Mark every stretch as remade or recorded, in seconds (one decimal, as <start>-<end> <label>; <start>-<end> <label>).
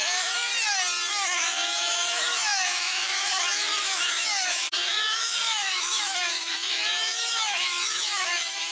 0.0-0.5 remade; 0.5-1.1 recorded; 1.1-8.7 remade